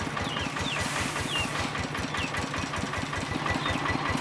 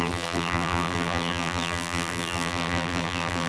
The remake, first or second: second